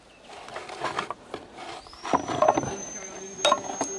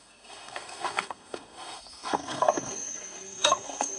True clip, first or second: first